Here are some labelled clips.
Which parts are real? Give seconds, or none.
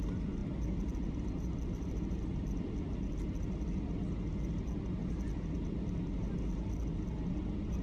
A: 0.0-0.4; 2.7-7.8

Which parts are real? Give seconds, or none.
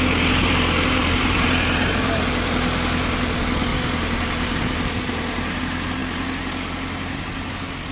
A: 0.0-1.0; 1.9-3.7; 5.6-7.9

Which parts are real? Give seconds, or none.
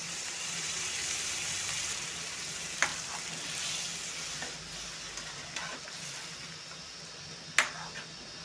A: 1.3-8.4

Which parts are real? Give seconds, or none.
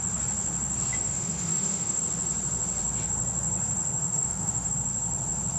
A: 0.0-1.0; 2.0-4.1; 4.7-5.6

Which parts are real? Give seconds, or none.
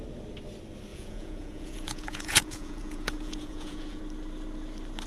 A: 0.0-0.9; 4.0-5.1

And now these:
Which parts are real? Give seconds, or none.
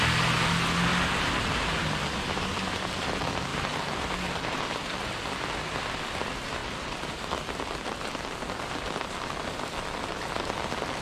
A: 0.0-11.0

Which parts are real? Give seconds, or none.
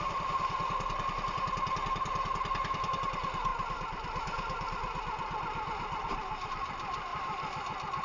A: 0.0-8.0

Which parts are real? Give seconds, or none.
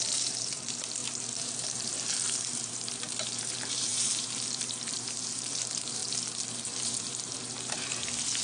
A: 6.0-6.8